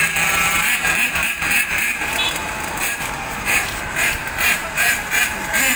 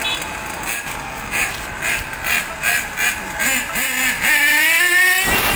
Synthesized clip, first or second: first